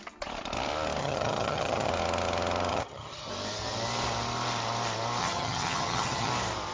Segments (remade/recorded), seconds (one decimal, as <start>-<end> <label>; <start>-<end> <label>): 0.0-1.0 recorded; 1.0-1.9 remade; 1.9-2.7 recorded; 2.7-3.3 remade; 3.3-5.2 recorded; 5.2-6.3 remade; 6.3-6.7 recorded

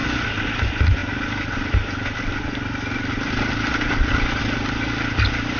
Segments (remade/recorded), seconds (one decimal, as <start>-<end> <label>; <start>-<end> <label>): 0.0-5.6 recorded

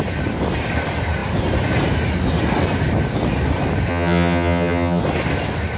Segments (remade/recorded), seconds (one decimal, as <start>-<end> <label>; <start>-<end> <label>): 0.0-3.9 recorded; 3.9-5.0 remade; 5.0-5.8 recorded

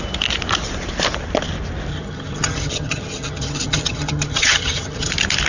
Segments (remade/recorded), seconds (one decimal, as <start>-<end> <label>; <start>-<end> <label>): 0.0-1.9 recorded; 1.9-5.1 remade; 5.1-5.5 recorded

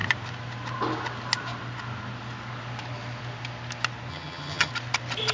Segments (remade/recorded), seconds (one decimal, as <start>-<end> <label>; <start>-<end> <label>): 0.0-4.1 recorded; 4.1-4.7 remade; 4.7-5.3 recorded

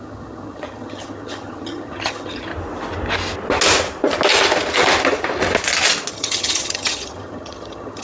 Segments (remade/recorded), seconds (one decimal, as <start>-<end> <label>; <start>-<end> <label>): 0.0-2.5 remade; 2.5-6.1 recorded; 6.1-8.0 remade